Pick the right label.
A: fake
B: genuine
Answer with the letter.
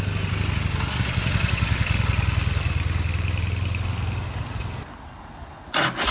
B